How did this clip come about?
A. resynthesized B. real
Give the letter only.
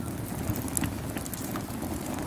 B